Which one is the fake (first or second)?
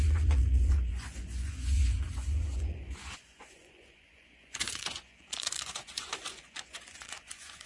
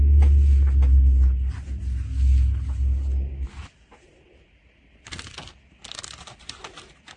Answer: first